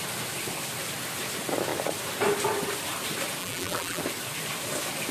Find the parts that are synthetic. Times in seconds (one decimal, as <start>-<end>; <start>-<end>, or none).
3.4-4.0